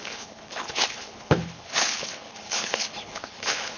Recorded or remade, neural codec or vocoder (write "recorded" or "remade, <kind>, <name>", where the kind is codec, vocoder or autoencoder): remade, codec, HILCodec